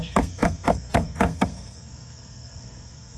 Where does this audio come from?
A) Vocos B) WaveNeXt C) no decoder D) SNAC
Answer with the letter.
D